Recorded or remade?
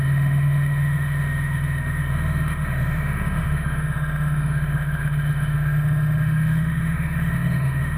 remade